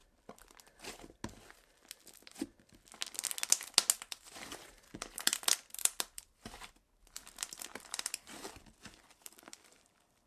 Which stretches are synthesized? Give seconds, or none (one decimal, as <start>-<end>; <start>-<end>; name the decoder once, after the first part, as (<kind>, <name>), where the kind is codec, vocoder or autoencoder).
4.0-10.3 (vocoder, BigVGAN v2)